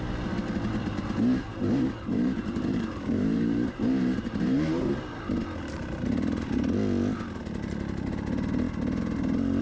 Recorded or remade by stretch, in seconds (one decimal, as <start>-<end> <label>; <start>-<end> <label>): 0.0-1.4 recorded; 1.4-4.9 remade; 4.9-9.6 recorded